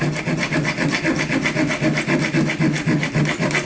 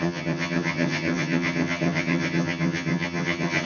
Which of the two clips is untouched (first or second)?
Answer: first